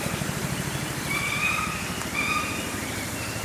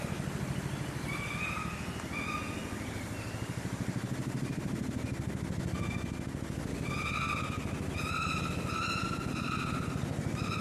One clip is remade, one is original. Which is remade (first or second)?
first